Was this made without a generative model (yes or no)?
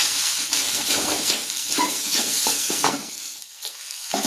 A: no